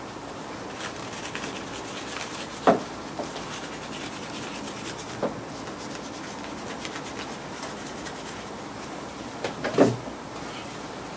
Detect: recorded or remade recorded